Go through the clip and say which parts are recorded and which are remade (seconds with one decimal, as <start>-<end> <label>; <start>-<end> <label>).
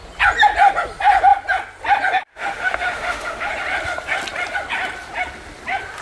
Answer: 0.0-2.3 recorded; 2.3-3.5 remade; 3.5-6.0 recorded